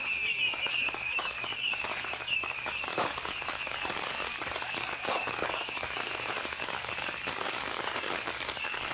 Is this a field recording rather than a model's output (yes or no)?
no